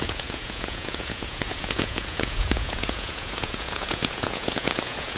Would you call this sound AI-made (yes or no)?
yes